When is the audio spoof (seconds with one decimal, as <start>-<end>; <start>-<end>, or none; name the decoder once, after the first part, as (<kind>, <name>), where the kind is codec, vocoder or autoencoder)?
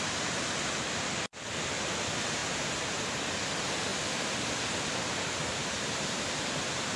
5.6-6.6 (vocoder, BigVGAN v2)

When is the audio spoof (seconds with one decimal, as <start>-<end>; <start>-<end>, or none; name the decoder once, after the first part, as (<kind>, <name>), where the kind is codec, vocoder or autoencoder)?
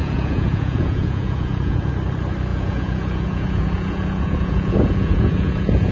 0.0-1.9 (vocoder, Vocos); 2.5-5.9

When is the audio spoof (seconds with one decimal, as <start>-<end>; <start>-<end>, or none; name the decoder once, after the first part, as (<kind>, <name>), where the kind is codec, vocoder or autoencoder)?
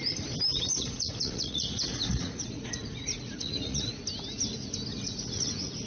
0.5-4.0 (vocoder, Vocos); 4.9-5.5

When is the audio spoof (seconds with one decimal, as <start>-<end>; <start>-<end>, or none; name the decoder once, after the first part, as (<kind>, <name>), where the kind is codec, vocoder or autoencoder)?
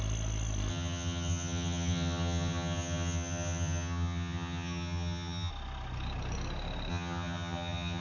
0.7-5.5 (vocoder, HiFi-GAN); 6.9-8.0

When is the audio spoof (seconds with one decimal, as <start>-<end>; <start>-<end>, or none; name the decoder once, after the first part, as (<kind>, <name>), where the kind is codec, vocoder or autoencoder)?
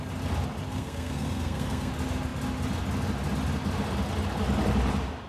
0.7-1.9 (codec, SNAC)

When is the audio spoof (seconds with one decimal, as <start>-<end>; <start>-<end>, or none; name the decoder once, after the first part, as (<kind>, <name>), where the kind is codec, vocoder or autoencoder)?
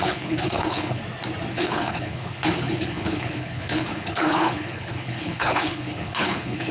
0.0-1.0 (codec, HILCodec); 1.5-6.7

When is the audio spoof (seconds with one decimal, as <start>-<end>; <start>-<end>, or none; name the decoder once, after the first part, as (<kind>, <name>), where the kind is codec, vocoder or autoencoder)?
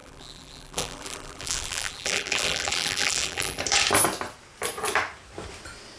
0.0-3.6 (vocoder, BigVGAN v2)